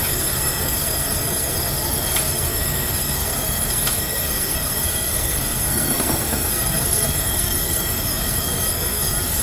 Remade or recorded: remade